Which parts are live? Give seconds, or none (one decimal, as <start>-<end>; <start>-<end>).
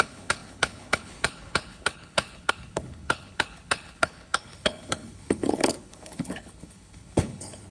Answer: none